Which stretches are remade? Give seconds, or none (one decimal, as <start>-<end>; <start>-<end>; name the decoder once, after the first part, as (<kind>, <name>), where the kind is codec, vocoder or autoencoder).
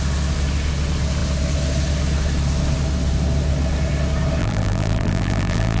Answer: 4.4-5.8 (vocoder, BigVGAN v2)